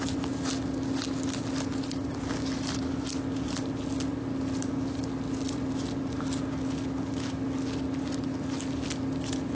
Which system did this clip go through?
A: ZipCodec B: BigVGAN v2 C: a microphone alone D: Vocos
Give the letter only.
C